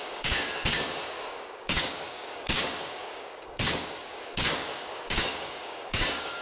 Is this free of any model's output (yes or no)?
no